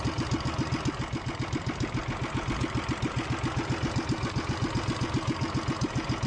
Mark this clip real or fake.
real